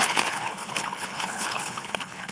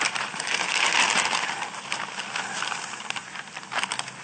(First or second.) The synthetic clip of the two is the first